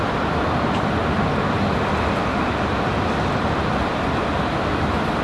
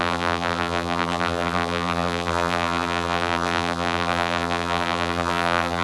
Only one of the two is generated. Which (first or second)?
second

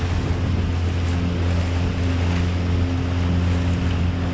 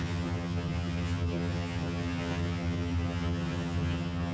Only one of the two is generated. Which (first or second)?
second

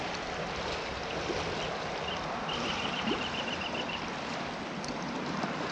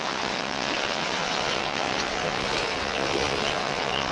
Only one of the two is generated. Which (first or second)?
second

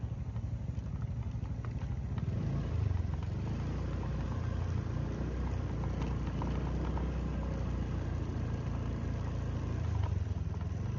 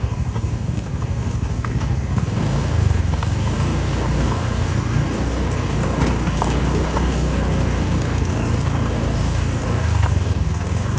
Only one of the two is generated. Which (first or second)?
second